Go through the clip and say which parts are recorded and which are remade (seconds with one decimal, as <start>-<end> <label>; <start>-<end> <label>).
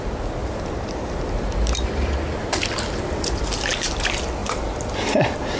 0.0-0.4 recorded; 0.4-2.2 remade; 2.2-4.4 recorded; 4.4-5.6 remade